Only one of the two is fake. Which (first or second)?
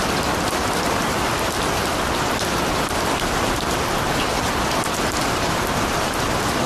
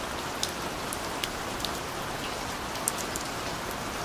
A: first